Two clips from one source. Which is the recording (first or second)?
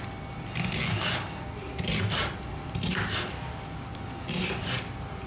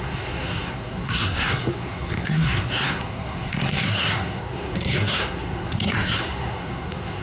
first